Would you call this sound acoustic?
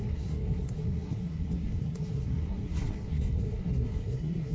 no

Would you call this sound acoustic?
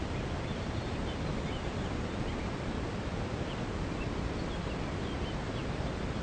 yes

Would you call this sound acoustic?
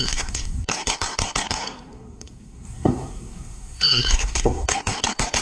no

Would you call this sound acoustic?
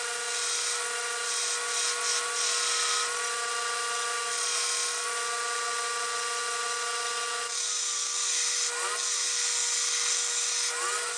yes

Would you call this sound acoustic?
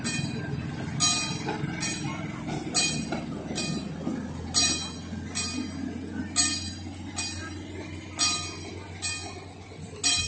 yes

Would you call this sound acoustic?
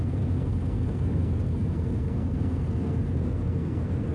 no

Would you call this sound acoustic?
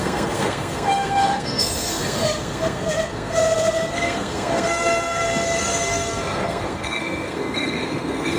no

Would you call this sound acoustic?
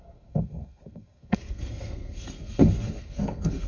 no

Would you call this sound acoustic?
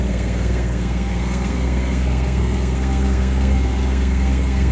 no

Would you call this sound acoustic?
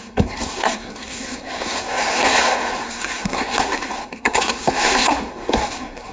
no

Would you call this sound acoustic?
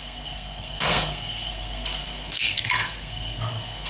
no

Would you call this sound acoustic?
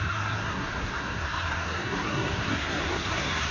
no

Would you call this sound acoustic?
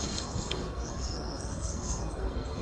no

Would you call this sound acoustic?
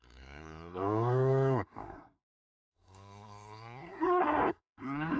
no